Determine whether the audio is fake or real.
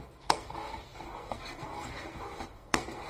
fake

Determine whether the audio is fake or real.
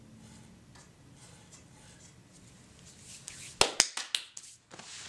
real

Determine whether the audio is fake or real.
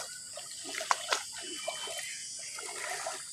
real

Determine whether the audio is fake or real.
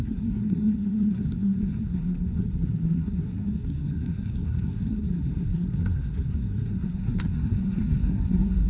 fake